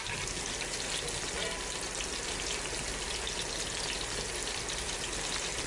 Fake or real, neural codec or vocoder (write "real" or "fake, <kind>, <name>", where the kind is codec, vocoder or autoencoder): real